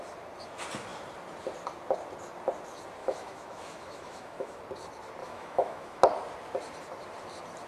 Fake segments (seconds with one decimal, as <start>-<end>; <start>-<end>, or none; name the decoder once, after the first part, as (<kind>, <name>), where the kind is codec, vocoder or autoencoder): 3.0-4.6 (autoencoder, DAC-VAE); 5.2-6.0